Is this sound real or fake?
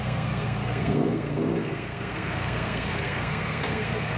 fake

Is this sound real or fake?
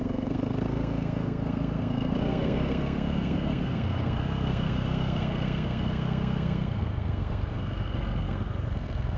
fake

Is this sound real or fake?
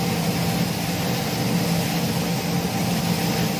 real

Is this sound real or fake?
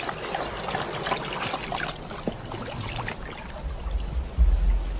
real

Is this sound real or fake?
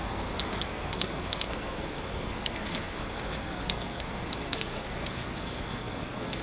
fake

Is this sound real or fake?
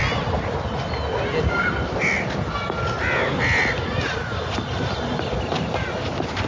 real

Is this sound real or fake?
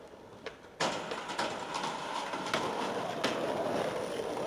real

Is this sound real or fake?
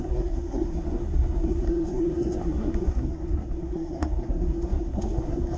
fake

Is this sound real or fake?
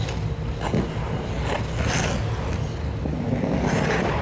real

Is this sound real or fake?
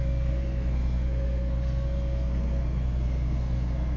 fake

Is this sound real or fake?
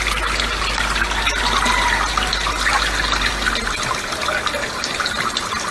real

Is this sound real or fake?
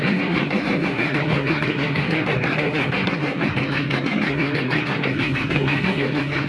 fake